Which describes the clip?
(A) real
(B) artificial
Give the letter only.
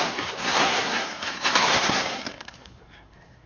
B